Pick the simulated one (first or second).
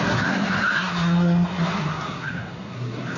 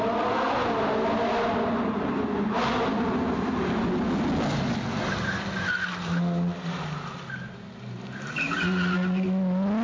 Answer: first